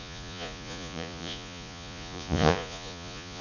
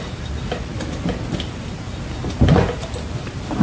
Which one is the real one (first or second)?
second